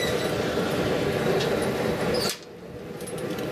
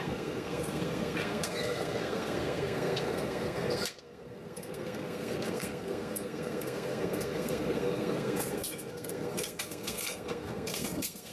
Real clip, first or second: first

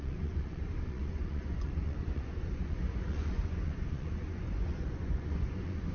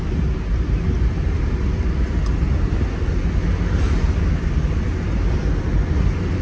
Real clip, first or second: second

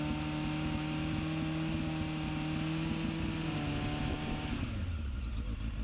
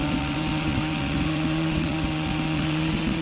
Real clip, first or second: first